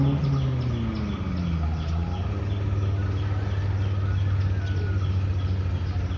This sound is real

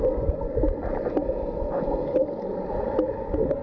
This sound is real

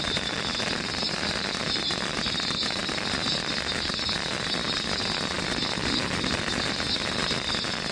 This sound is fake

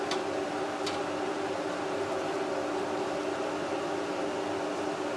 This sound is real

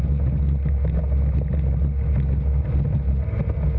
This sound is real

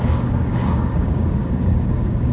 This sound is fake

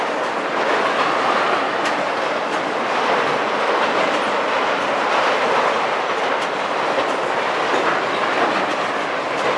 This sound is real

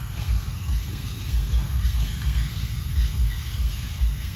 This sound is fake